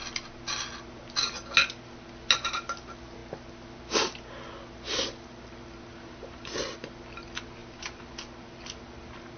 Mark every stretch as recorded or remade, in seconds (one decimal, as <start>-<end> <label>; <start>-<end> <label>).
0.0-5.9 recorded; 5.9-6.5 remade; 6.5-7.6 recorded; 7.6-8.1 remade; 8.1-9.4 recorded